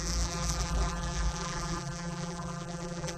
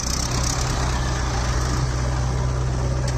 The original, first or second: second